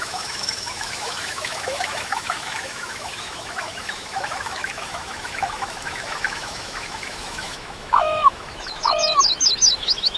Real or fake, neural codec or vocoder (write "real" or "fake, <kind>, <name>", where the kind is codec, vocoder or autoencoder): fake, autoencoder, DAC-VAE